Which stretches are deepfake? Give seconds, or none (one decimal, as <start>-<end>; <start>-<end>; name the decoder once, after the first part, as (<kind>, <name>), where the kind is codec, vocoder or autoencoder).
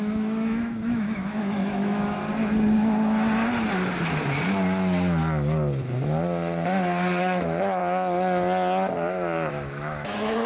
0.0-2.2 (autoencoder, DAC-VAE); 7.2-7.8; 9.5-10.5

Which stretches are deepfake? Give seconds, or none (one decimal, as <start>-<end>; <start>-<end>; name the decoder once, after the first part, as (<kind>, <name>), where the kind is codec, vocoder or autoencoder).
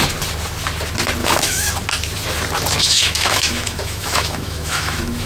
1.2-1.7 (autoencoder, DAC-VAE); 2.8-5.3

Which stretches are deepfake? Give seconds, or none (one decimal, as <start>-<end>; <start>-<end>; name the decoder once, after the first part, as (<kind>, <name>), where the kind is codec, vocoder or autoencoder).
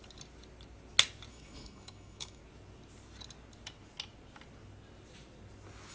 1.3-2.4 (autoencoder, DAC-VAE)